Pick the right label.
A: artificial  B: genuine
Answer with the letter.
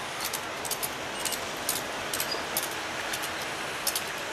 B